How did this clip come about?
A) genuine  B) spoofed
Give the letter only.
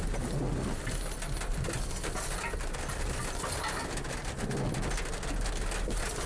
A